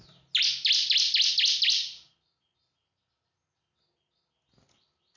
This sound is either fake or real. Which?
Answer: real